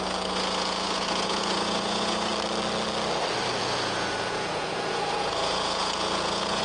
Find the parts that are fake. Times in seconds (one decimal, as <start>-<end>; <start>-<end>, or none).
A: 0.0-2.3; 3.6-6.6

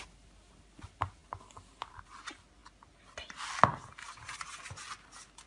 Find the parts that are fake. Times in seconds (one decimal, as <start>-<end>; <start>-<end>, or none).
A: none

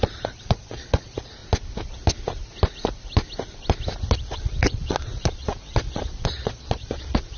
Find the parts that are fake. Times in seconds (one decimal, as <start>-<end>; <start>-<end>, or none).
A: 0.0-1.4; 4.2-7.4

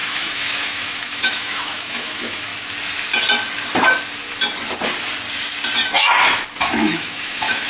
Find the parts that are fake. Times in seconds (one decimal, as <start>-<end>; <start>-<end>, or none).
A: 0.0-2.5; 6.6-7.7

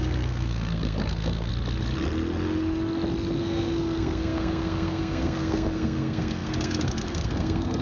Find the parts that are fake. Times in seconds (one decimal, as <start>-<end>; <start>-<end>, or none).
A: 0.0-1.5; 3.4-7.8

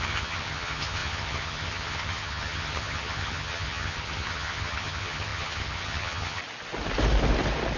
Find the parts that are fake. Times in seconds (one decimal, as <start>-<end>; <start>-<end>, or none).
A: 0.0-6.4

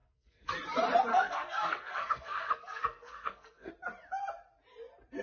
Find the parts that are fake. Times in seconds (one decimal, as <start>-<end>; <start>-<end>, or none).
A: 0.0-0.5; 1.1-3.7